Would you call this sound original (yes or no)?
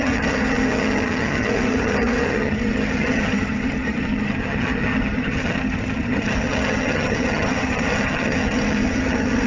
no